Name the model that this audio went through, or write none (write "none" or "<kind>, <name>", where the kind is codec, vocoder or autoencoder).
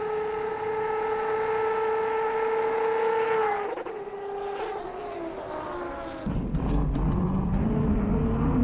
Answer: none